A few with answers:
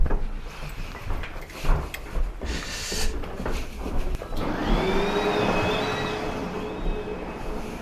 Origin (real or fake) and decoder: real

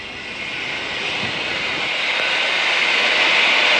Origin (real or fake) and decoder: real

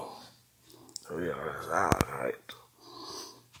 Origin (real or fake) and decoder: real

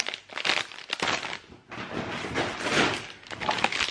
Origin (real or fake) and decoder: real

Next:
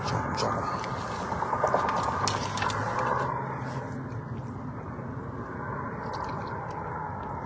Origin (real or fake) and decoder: real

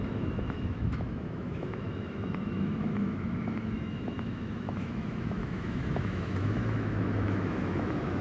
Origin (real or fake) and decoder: fake, autoencoder, DAC-VAE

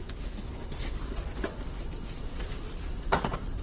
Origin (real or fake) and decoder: fake, vocoder, BigVGAN v2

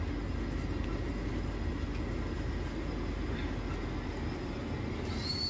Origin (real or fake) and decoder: real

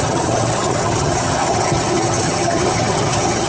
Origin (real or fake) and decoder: fake, vocoder, HiFi-GAN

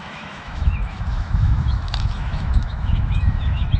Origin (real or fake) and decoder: fake, autoencoder, DAC-VAE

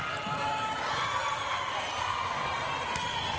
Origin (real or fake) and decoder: real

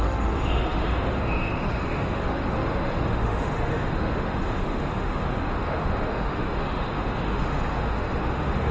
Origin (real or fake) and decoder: fake, autoencoder, DAC-VAE